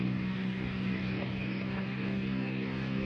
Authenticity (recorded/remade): remade